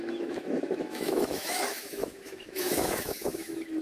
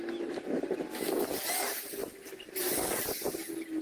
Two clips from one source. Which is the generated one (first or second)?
first